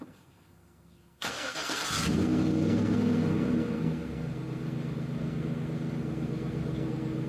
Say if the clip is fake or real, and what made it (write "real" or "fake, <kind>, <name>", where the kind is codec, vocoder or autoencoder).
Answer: fake, codec, SNAC